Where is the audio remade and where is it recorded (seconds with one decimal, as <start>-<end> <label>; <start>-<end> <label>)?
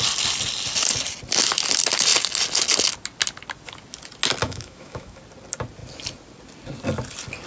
0.0-4.4 recorded; 4.4-5.2 remade; 5.2-7.5 recorded